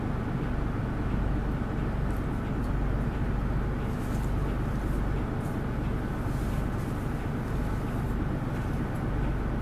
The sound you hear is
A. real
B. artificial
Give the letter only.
A